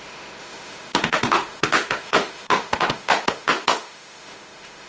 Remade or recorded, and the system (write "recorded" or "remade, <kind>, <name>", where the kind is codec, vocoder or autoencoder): remade, autoencoder, DAC-VAE